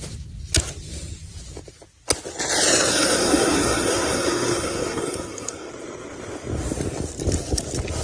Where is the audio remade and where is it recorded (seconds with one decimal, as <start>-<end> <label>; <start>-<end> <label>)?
0.0-2.9 recorded; 2.9-5.7 remade; 5.7-8.0 recorded